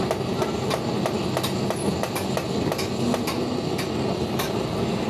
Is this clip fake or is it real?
real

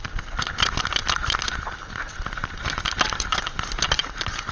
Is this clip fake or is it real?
real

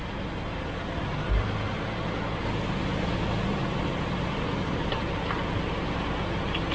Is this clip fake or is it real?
real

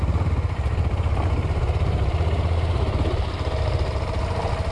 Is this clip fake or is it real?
real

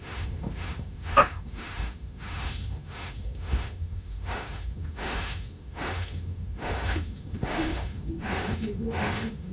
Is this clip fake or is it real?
fake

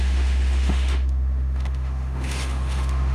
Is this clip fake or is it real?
fake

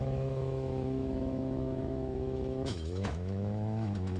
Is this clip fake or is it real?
fake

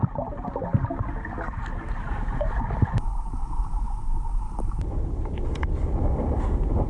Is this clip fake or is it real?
real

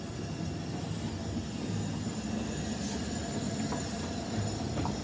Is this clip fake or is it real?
real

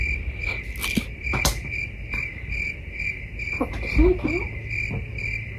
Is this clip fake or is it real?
real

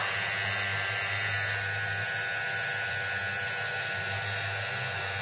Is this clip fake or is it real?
real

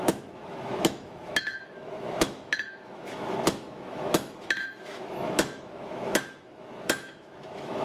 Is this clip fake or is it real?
fake